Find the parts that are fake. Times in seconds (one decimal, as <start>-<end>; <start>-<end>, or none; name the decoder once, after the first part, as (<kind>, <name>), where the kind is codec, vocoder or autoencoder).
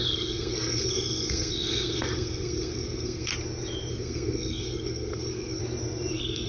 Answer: 0.0-3.3 (codec, SNAC); 3.9-5.6; 6.1-6.5